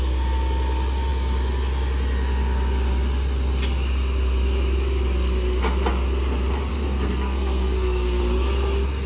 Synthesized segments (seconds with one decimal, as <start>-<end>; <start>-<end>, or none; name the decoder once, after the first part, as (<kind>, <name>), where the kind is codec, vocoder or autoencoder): 6.7-8.2 (codec, SNAC)